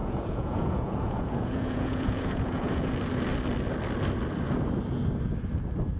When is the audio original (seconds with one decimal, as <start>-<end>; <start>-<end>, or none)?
2.9-6.0